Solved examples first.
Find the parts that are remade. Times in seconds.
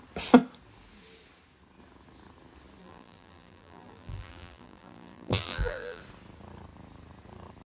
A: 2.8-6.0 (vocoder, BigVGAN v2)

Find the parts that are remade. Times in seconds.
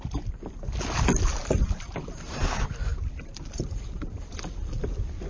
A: 1.4-2.2 (vocoder, BigVGAN v2); 2.9-4.5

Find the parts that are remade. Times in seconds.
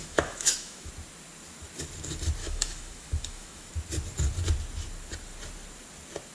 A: 0.0-0.9 (autoencoder, DAC-VAE); 2.4-3.7